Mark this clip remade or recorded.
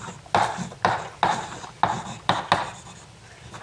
recorded